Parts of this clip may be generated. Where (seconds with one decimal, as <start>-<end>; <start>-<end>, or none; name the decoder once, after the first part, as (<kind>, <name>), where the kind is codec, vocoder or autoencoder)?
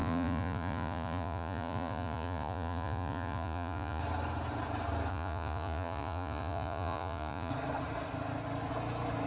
0.0-4.0 (vocoder, Vocos); 5.1-7.5